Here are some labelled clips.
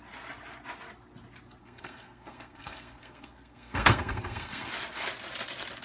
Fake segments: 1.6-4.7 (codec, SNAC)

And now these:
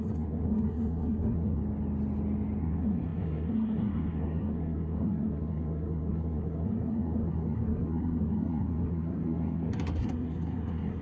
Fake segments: 0.0-1.6 (codec, SNAC); 2.6-11.0

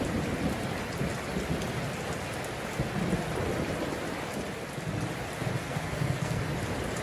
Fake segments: 5.6-6.4 (codec, SNAC)

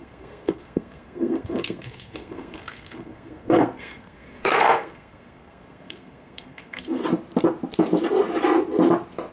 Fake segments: 0.0-7.0 (codec, SNAC)

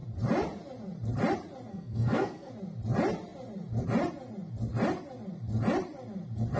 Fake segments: 1.7-2.5 (codec, SNAC)

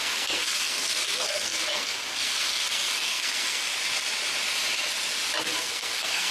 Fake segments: 0.0-3.7 (codec, SNAC); 5.4-6.3

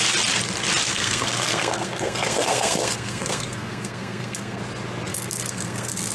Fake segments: 0.9-4.6 (codec, SNAC); 5.1-6.1